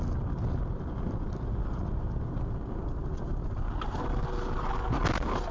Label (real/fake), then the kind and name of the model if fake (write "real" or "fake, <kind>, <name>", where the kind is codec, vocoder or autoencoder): real